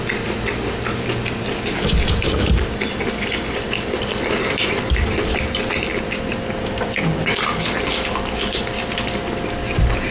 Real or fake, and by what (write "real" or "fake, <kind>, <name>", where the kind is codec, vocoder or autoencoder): real